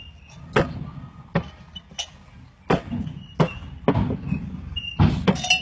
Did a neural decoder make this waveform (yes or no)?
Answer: no